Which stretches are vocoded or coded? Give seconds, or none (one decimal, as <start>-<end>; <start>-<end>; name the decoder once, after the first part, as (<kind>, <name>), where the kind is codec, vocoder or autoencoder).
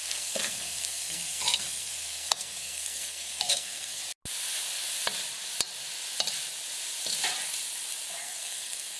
0.0-4.0 (codec, SNAC); 8.2-9.0